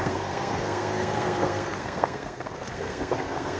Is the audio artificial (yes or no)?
yes